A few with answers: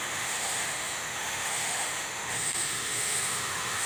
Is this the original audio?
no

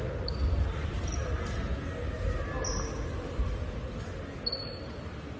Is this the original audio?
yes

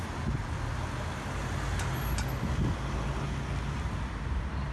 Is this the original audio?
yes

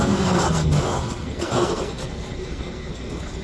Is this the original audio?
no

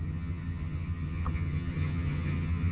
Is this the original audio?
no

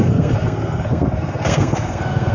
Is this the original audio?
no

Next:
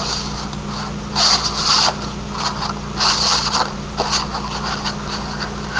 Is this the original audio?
yes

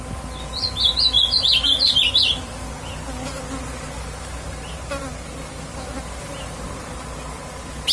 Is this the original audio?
yes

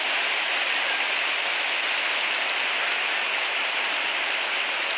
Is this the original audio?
yes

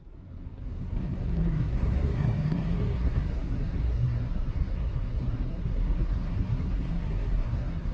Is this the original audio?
no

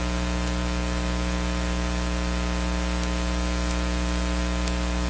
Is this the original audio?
yes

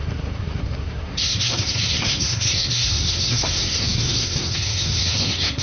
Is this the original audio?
no